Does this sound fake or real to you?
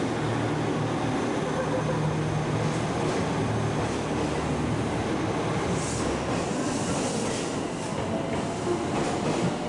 real